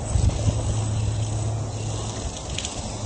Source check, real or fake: real